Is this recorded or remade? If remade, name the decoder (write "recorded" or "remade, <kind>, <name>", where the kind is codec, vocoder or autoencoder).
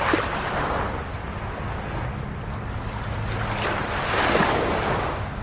recorded